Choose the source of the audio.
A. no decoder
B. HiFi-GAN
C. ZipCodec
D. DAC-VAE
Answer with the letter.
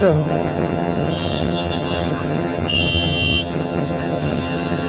B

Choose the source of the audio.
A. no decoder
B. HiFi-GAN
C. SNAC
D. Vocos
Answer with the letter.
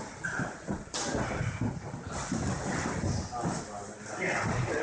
A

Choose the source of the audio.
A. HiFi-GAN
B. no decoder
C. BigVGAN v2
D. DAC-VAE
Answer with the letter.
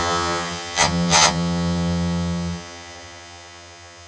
A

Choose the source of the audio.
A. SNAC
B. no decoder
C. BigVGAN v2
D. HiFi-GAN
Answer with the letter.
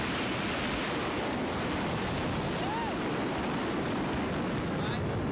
B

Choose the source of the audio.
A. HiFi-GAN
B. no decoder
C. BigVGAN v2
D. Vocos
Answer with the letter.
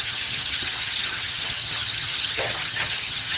A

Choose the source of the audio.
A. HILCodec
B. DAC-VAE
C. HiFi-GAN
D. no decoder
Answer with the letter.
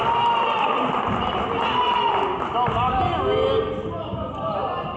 D